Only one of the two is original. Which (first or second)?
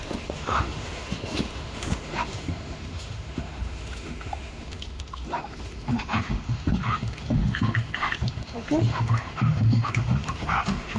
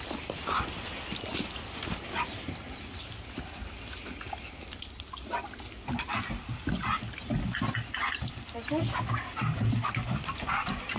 second